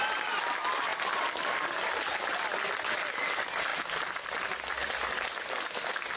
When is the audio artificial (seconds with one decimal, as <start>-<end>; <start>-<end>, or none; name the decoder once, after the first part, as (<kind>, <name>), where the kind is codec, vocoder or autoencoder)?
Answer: none